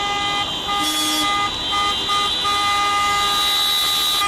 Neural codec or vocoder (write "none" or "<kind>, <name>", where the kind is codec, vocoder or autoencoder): none